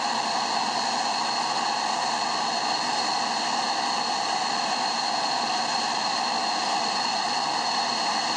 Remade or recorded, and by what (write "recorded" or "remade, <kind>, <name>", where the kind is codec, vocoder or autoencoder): recorded